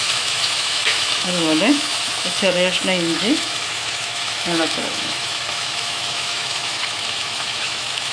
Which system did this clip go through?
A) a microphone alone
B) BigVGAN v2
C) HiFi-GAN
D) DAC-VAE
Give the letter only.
D